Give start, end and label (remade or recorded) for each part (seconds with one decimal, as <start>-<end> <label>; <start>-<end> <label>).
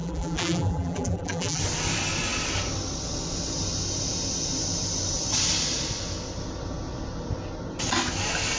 0.0-1.6 remade; 1.6-8.6 recorded